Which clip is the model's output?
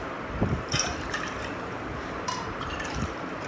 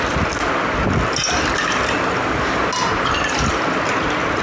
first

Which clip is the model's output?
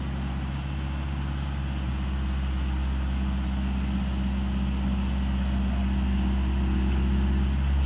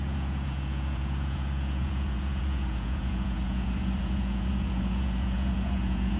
second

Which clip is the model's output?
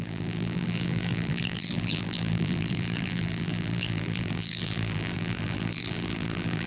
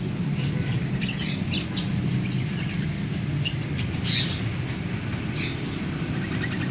first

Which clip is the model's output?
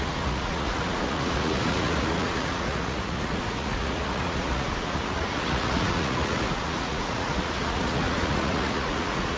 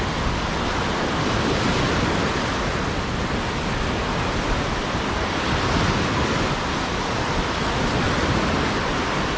first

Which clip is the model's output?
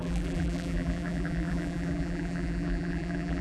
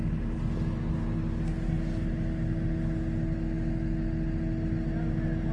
first